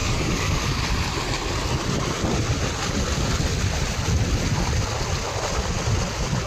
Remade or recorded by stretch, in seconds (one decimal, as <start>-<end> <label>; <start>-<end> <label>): 0.0-0.8 remade; 0.8-6.5 recorded